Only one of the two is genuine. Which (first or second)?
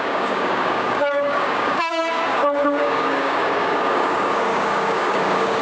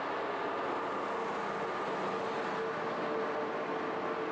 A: second